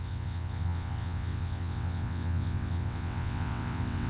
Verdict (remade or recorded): remade